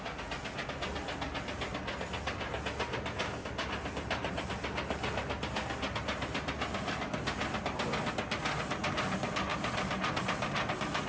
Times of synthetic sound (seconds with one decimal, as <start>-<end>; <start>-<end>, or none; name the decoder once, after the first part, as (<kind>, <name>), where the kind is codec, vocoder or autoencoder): none